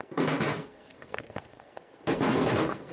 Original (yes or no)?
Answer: no